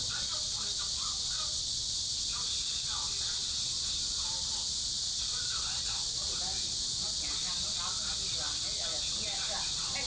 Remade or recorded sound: recorded